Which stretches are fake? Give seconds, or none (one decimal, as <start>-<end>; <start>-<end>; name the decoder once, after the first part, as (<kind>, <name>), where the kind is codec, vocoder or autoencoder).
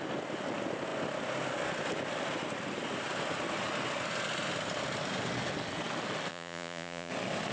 6.3-7.1 (vocoder, Vocos)